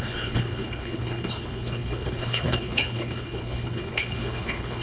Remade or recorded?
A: remade